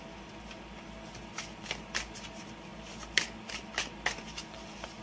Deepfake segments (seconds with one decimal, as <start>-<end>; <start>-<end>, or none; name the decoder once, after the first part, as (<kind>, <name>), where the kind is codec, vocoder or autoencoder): 0.0-2.7 (vocoder, BigVGAN v2); 3.5-5.0